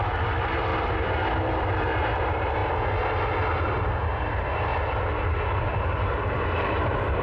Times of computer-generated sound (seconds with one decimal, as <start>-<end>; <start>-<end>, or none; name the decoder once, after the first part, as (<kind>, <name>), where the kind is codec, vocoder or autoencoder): 0.0-0.7 (vocoder, BigVGAN v2); 1.6-2.6; 4.0-4.7; 5.6-7.2